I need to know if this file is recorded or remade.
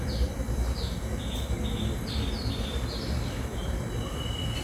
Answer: remade